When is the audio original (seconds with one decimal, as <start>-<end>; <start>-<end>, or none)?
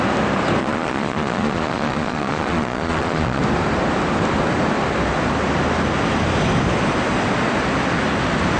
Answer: 0.0-0.6; 3.4-8.6